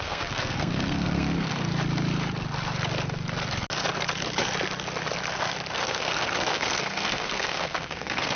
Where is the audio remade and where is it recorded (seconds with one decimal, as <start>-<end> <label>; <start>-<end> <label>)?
0.0-1.7 remade; 1.7-5.7 recorded; 5.7-8.4 remade